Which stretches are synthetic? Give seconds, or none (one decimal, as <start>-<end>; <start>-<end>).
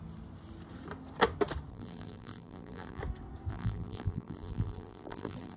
1.7-3.0; 3.5-5.6